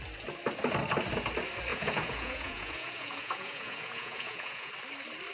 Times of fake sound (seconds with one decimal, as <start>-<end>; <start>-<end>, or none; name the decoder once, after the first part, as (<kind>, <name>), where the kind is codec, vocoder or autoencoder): 1.7-4.7 (vocoder, Vocos)